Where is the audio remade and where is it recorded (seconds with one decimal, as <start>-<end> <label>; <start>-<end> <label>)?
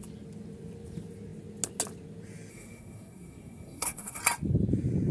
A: 0.0-2.5 recorded; 2.5-4.2 remade; 4.2-5.1 recorded